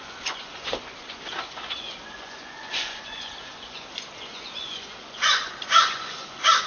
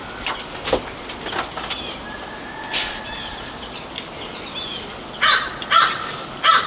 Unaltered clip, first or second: second